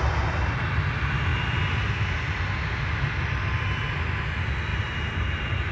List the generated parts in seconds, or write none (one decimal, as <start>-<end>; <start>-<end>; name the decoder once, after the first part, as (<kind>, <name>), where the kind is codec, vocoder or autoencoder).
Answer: 4.7-5.7 (vocoder, BigVGAN v2)